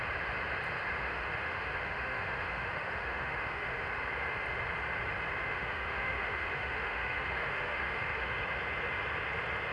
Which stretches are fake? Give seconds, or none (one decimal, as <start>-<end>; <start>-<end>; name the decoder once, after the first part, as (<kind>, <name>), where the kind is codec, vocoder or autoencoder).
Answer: 1.0-3.9 (autoencoder, DAC-VAE); 5.4-8.4